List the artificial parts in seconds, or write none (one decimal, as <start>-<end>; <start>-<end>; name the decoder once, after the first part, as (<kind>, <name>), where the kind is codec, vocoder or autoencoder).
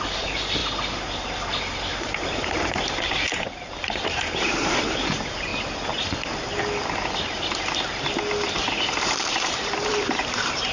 0.0-0.6 (vocoder, BigVGAN v2); 2.0-5.5; 9.0-10.7